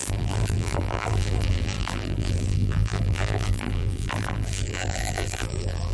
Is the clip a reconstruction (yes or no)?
yes